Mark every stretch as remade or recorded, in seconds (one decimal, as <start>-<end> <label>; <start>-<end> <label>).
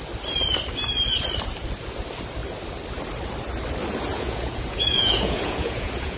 0.0-4.1 recorded; 4.1-6.2 remade